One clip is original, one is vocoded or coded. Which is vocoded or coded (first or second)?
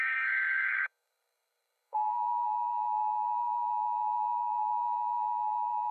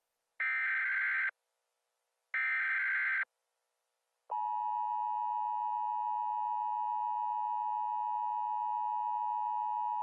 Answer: first